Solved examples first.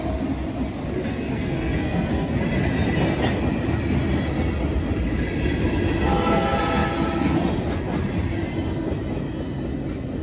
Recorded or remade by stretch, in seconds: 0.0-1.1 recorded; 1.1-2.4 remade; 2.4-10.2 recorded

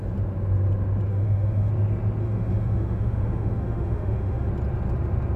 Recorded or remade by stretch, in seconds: 0.0-1.1 recorded; 1.1-1.7 remade; 1.7-2.2 recorded; 2.2-4.5 remade; 4.5-5.4 recorded

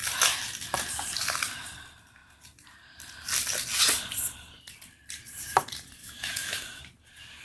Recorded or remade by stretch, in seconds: 0.0-6.0 recorded; 6.0-6.8 remade; 6.8-7.4 recorded

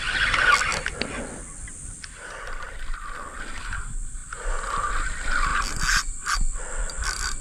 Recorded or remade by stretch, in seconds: 0.0-7.4 recorded

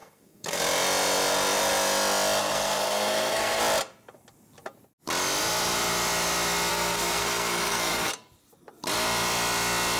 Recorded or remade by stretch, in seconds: 0.0-0.6 remade; 0.6-2.4 recorded; 2.4-3.6 remade; 3.6-6.7 recorded; 6.7-8.1 remade; 8.1-10.0 recorded